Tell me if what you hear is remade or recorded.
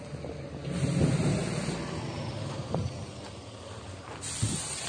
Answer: recorded